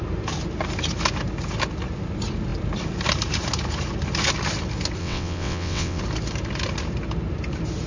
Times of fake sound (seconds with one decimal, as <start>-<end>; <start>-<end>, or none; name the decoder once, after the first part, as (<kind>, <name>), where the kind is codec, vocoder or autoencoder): 5.0-6.0 (vocoder, WaveNeXt)

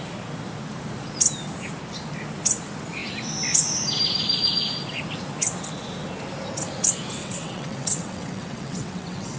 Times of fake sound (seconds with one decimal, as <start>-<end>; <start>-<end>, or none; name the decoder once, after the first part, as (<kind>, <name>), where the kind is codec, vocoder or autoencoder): 7.2-9.4 (vocoder, WaveNeXt)